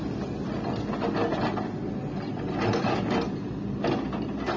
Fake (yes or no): no